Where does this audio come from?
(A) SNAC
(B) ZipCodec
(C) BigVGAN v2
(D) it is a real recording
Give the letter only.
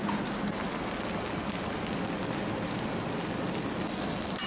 D